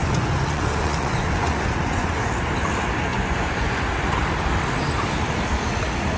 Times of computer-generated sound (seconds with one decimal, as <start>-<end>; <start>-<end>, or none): 0.0-2.3; 3.1-3.9